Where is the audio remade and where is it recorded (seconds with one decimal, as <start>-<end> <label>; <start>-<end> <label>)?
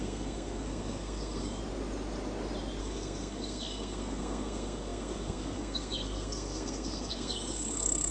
0.0-1.6 remade; 1.6-2.8 recorded; 2.8-8.1 remade